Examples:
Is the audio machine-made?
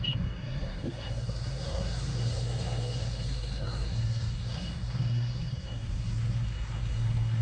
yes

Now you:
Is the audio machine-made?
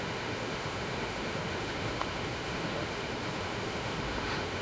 yes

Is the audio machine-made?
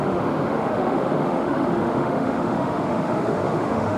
yes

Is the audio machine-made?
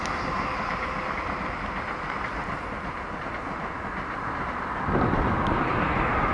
no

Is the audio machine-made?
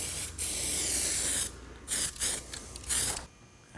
yes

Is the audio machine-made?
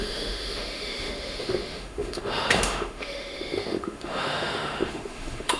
yes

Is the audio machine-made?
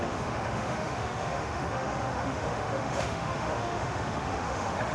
yes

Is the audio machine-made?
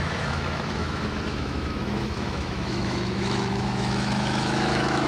yes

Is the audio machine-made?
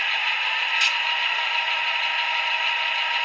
no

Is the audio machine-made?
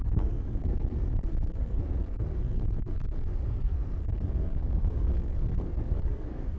yes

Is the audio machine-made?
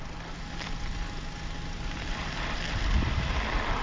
yes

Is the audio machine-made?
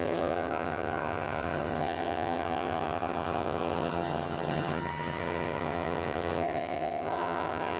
yes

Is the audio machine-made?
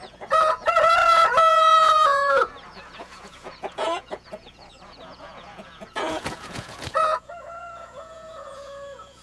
yes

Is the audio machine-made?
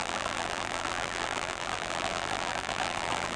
yes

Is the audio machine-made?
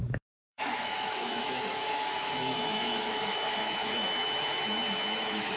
yes